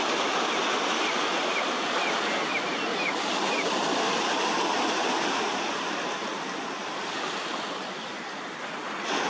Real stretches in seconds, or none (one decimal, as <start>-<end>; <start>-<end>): 0.0-2.9; 3.8-9.3